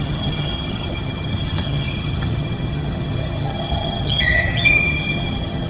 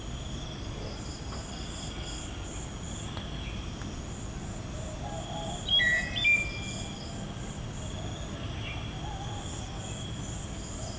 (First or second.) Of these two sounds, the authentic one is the second